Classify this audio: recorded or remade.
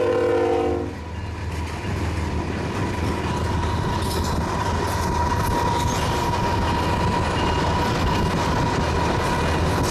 recorded